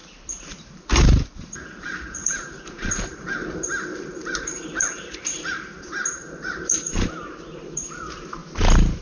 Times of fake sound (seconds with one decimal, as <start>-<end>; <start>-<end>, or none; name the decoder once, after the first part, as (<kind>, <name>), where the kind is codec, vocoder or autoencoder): 0.7-8.4 (vocoder, BigVGAN v2)